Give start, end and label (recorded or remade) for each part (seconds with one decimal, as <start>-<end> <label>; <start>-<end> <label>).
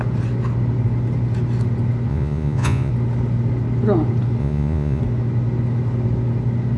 0.0-2.1 recorded; 2.1-2.9 remade; 2.9-4.4 recorded; 4.4-5.0 remade; 5.0-6.8 recorded